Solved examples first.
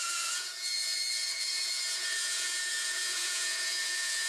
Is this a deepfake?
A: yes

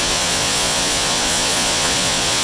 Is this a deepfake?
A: yes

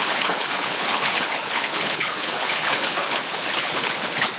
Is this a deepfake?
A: yes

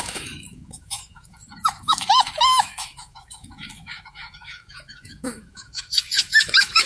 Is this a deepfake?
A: yes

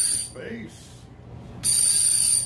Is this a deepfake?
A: no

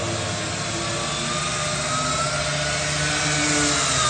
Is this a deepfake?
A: no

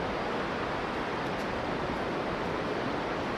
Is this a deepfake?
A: no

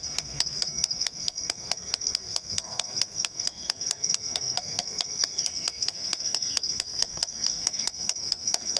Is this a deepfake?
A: yes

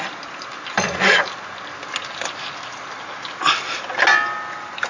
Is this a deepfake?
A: no